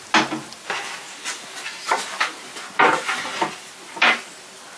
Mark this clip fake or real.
real